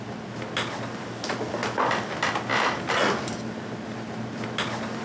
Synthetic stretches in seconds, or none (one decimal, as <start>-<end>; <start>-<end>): none